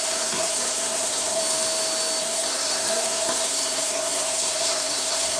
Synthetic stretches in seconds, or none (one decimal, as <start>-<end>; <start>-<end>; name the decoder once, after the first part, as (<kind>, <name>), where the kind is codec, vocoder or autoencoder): 0.0-1.4 (codec, SNAC); 2.2-5.4